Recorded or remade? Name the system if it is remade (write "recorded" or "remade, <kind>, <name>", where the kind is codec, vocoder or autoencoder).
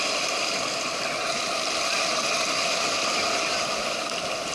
recorded